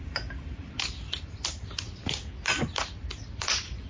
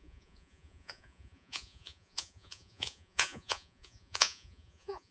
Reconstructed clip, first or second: second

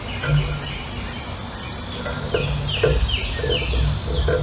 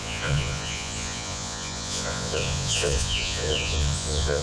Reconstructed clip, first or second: second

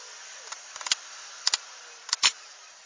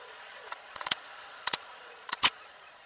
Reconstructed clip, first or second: second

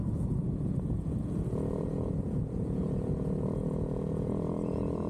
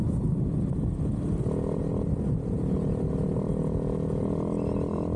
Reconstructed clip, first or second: first